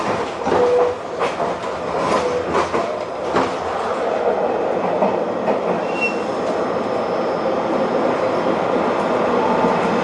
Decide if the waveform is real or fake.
real